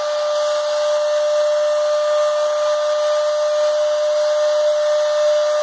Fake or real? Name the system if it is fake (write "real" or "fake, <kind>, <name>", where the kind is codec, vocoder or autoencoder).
real